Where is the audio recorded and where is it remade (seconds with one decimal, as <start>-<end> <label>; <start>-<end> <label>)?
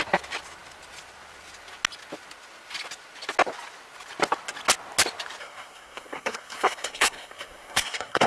0.0-5.4 recorded; 5.4-8.3 remade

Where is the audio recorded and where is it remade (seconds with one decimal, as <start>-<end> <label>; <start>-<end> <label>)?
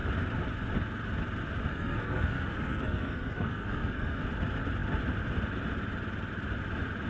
0.0-1.7 recorded; 1.7-4.2 remade; 4.2-7.1 recorded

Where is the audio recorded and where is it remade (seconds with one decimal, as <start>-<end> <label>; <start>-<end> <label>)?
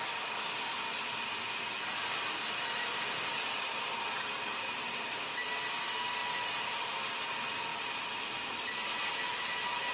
0.0-9.9 recorded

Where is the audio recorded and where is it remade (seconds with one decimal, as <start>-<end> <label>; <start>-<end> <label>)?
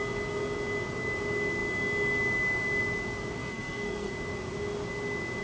0.0-3.4 recorded; 3.4-4.1 remade; 4.1-5.4 recorded